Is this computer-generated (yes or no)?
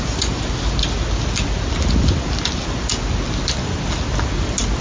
no